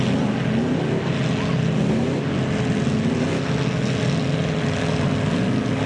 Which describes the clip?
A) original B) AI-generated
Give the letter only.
A